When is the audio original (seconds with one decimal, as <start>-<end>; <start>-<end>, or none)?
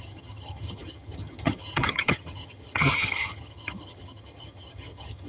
none